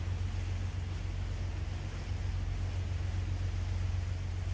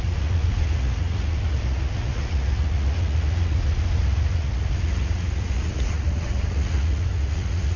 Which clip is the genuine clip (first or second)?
first